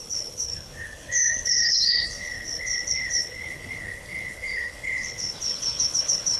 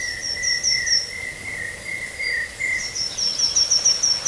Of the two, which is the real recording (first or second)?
second